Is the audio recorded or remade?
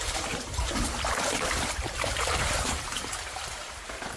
remade